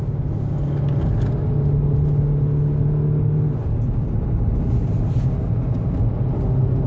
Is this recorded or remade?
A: recorded